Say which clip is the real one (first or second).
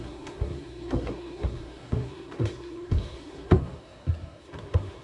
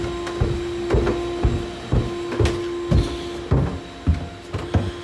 second